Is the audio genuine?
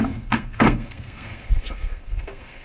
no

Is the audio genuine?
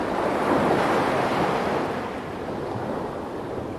yes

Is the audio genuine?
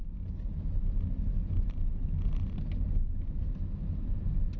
yes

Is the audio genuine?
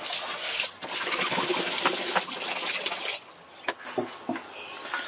yes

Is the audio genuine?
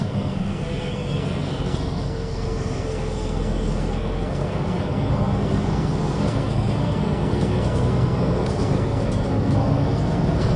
no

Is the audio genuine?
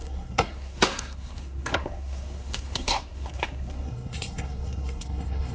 no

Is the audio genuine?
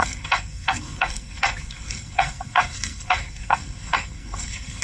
no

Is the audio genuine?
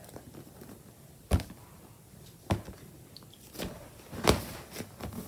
yes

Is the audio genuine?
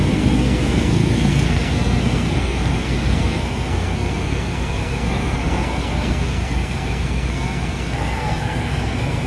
no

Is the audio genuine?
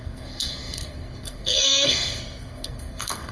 no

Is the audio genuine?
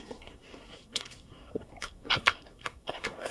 no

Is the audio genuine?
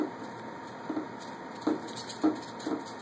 yes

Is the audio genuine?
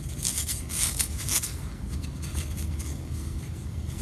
no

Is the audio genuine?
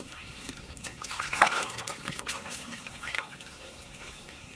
no